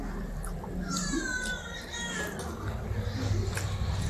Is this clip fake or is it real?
real